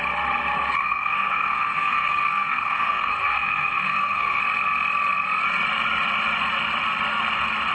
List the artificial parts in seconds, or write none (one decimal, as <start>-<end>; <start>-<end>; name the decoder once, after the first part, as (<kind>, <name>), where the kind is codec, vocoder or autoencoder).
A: 0.8-4.4 (codec, SNAC)